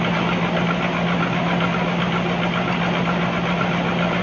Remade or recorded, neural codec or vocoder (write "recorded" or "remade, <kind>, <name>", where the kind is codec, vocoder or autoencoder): recorded